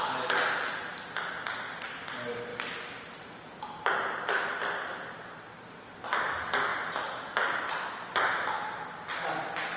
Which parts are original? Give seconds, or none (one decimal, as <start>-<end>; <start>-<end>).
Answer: 0.0-2.5; 4.4-9.8